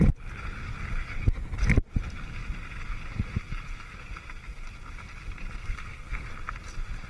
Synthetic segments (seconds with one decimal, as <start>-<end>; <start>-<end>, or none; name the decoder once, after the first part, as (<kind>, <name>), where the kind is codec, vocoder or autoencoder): 5.6-6.3 (codec, SNAC)